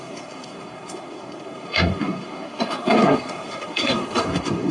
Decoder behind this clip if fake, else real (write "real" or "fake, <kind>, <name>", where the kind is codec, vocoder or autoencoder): fake, codec, SNAC